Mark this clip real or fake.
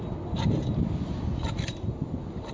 real